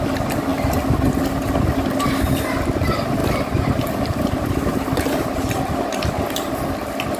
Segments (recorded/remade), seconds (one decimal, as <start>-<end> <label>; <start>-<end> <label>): 0.0-3.2 recorded; 3.2-5.3 remade; 5.3-7.2 recorded

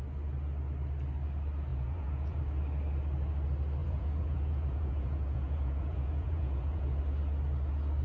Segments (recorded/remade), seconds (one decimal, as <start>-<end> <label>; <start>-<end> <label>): 0.0-1.7 recorded; 1.7-2.4 remade; 2.4-3.8 recorded; 3.8-7.0 remade; 7.0-8.0 recorded